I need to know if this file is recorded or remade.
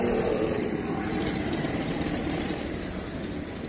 remade